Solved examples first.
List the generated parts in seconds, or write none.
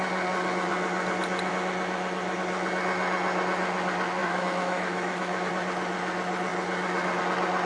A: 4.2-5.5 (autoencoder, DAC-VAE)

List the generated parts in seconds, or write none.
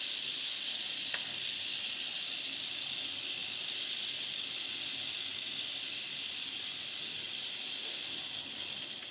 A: none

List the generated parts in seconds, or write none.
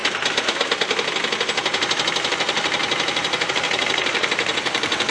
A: 2.3-2.8 (vocoder, BigVGAN v2); 3.5-5.1